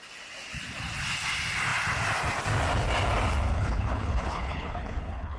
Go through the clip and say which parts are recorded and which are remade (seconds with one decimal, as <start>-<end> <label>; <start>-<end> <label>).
0.0-3.5 recorded; 3.5-5.4 remade